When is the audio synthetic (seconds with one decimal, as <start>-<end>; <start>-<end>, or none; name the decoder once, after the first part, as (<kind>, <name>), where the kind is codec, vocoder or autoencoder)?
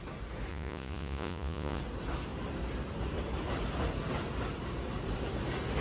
0.5-1.8 (vocoder, Vocos)